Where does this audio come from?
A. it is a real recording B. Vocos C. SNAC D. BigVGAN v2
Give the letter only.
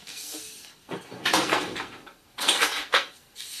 C